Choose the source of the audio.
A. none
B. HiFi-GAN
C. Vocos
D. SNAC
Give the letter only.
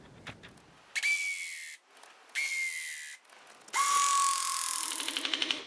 A